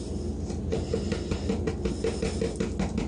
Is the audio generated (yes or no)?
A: no